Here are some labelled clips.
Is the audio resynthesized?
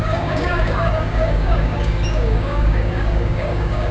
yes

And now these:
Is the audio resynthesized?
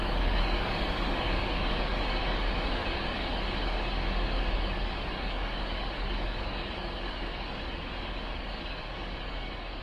yes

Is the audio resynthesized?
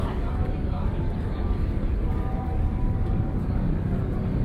yes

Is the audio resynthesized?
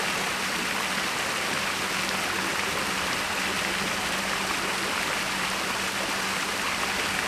no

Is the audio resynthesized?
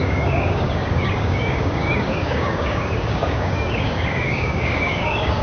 yes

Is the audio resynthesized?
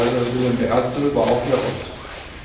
no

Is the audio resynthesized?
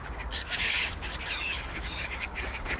yes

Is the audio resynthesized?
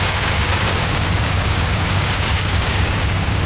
yes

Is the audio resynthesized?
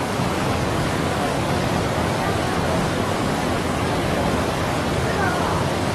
yes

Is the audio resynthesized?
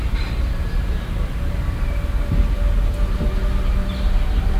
no